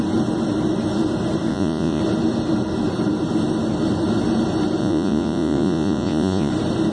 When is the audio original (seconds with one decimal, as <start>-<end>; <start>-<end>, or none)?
0.0-1.5; 2.0-4.8; 6.5-6.9